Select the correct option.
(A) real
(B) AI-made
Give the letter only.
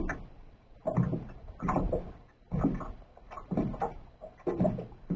A